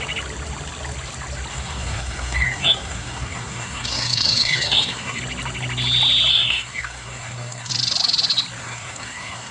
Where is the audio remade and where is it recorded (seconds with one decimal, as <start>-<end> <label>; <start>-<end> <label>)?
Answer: 0.0-1.5 recorded; 1.5-5.2 remade; 5.2-6.3 recorded; 6.3-7.7 remade; 7.7-8.6 recorded; 8.6-9.5 remade